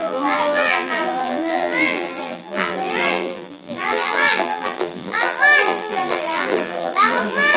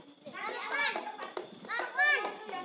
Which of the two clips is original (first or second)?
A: second